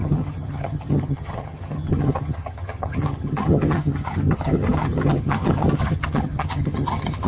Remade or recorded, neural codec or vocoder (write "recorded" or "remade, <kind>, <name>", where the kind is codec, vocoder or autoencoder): remade, vocoder, HiFi-GAN